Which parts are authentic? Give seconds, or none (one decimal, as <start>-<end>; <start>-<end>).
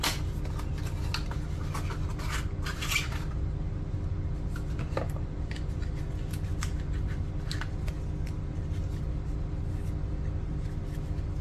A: 0.0-2.7; 6.0-11.4